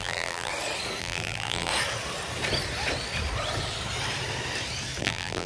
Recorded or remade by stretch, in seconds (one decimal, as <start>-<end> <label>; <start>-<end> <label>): 0.0-0.5 remade; 0.5-1.0 recorded; 1.0-1.7 remade; 1.7-5.0 recorded; 5.0-5.5 remade